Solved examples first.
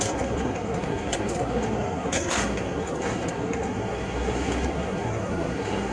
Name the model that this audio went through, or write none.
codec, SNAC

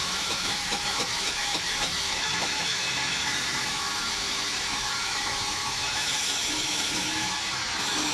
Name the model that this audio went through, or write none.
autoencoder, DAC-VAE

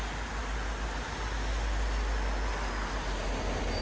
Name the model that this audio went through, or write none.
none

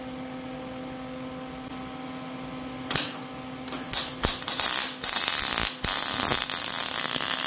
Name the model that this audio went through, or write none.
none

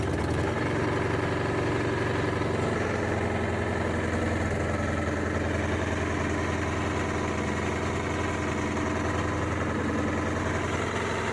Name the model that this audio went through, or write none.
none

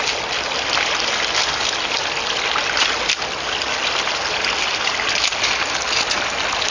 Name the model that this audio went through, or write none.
none